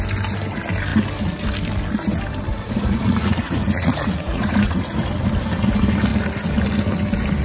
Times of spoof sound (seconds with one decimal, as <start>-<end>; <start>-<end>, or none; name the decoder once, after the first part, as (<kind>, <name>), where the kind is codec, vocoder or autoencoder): 2.5-4.9 (vocoder, Vocos)